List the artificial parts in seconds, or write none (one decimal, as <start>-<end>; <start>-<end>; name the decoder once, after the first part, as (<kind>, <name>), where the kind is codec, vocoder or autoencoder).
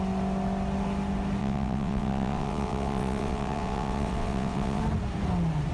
1.4-4.8 (vocoder, WaveNeXt)